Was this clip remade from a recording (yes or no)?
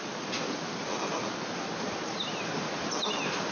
no